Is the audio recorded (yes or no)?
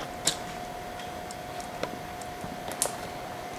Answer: yes